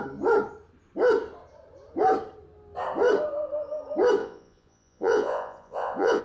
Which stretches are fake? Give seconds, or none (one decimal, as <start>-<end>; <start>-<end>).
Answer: 4.2-6.2